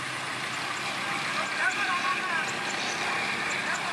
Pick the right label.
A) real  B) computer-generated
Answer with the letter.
A